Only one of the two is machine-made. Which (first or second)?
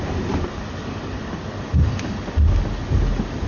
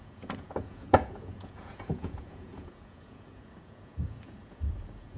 second